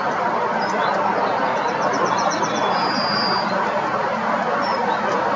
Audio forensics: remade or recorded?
recorded